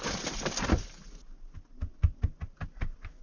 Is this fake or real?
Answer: real